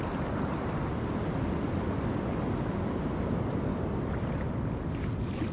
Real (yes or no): yes